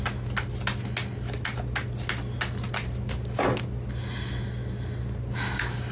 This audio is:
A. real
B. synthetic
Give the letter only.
A